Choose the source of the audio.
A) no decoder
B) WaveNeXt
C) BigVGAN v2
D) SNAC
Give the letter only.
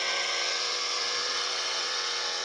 B